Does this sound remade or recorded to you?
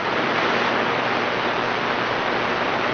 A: recorded